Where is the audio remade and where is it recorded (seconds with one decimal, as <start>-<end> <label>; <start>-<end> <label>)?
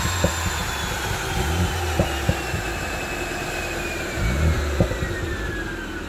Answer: 0.0-1.0 recorded; 1.0-2.4 remade; 2.4-3.4 recorded; 3.4-4.2 remade; 4.2-6.1 recorded